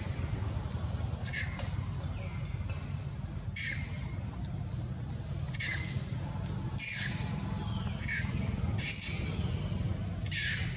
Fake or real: real